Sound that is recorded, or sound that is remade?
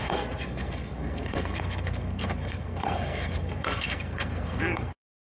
remade